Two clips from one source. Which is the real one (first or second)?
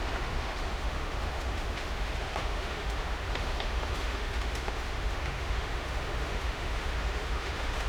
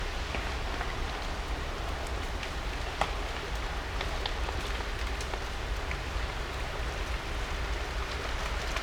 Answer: second